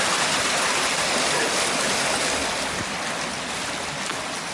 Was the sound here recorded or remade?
recorded